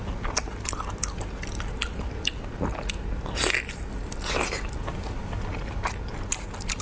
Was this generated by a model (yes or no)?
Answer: no